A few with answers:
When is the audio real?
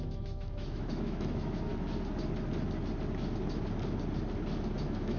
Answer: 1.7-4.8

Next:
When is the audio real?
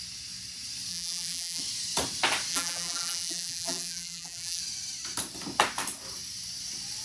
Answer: 0.0-0.9; 1.6-2.5; 4.6-7.0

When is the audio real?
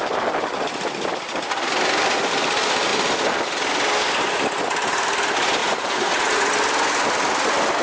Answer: 0.0-5.6; 6.5-7.8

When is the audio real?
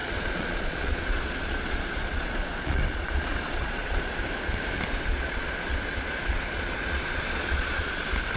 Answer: 4.2-5.1; 8.0-8.4